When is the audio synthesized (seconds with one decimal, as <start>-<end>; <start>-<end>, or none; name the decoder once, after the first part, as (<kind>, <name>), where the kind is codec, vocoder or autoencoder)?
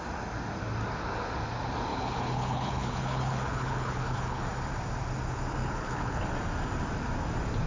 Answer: 1.9-4.4 (codec, HILCodec); 5.6-6.2